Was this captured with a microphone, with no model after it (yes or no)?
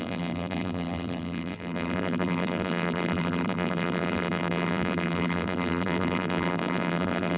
no